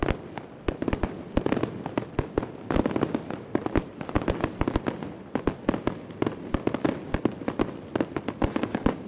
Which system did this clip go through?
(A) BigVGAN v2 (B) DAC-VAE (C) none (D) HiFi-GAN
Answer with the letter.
C